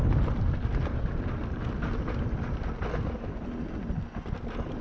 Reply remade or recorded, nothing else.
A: recorded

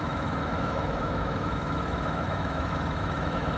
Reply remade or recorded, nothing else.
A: remade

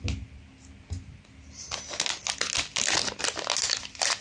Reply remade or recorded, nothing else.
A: recorded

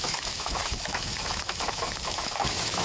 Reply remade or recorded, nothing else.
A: remade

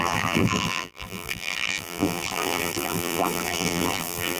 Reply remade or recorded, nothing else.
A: remade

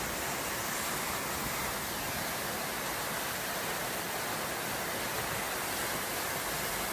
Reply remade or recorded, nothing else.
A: recorded